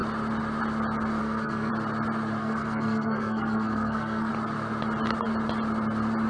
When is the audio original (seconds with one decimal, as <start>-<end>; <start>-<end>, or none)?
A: 0.0-1.2; 1.7-2.4; 4.3-6.3